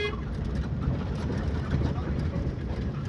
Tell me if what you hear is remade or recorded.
remade